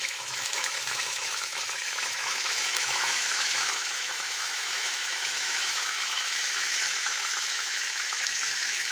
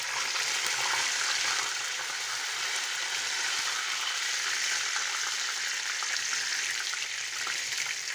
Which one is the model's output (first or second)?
first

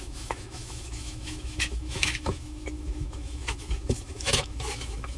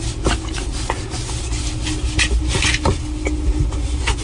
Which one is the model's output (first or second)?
first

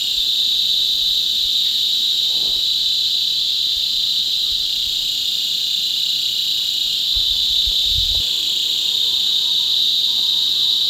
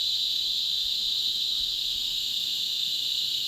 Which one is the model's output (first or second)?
second